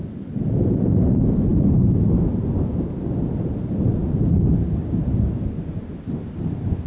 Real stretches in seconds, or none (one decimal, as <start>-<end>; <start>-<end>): 0.0-6.9